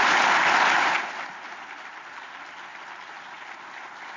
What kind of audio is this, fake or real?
real